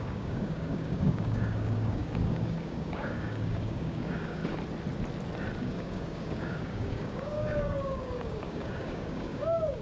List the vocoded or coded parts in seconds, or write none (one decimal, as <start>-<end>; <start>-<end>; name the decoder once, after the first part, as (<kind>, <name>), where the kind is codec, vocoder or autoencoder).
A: 0.0-4.4 (codec, DAC); 5.6-9.8